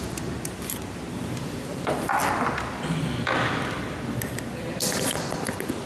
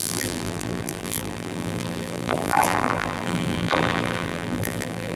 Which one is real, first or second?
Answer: first